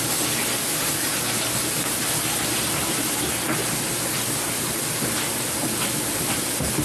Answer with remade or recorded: recorded